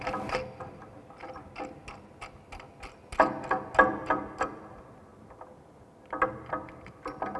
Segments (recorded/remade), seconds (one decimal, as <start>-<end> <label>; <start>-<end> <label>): 0.0-7.4 recorded